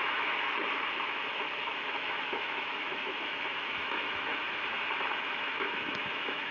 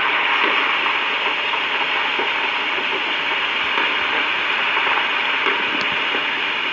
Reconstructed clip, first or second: first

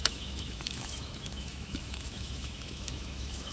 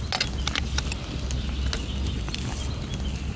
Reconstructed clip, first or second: first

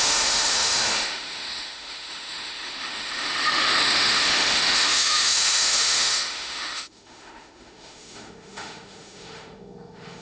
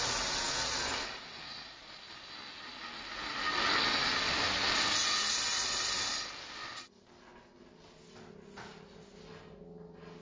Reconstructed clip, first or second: first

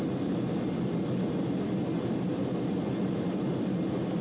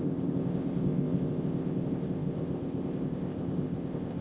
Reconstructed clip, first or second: second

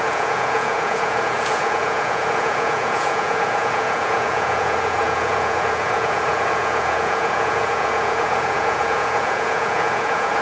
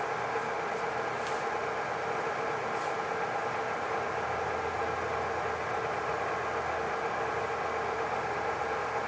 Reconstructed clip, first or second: first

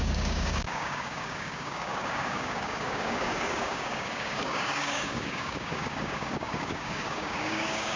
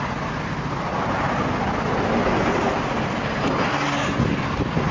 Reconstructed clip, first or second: first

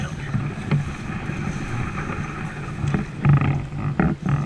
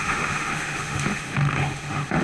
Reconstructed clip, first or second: second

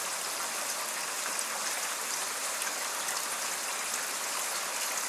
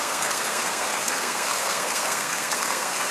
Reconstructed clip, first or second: second